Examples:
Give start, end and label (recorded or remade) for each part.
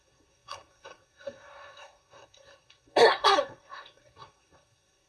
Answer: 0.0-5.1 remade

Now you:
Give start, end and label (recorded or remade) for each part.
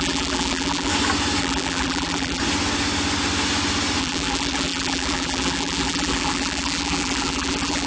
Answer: 0.0-0.9 remade; 0.9-1.4 recorded; 1.4-2.4 remade; 2.4-4.0 recorded; 4.0-7.9 remade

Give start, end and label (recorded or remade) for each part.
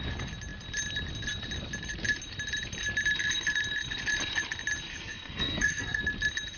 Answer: 0.0-4.9 recorded; 4.9-6.0 remade; 6.0-6.6 recorded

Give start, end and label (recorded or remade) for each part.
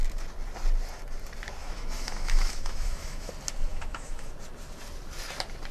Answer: 0.0-1.6 recorded; 1.6-3.3 remade; 3.3-3.7 recorded; 3.7-4.3 remade; 4.3-5.7 recorded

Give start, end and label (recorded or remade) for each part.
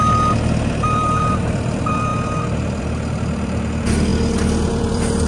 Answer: 0.0-2.1 remade; 2.1-2.8 recorded; 2.8-4.1 remade; 4.1-4.7 recorded; 4.7-5.3 remade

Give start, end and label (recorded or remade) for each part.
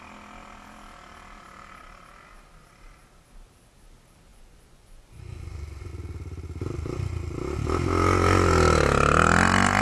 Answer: 0.0-4.3 recorded; 4.3-5.9 remade; 5.9-9.8 recorded